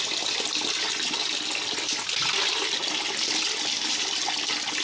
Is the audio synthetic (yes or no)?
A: no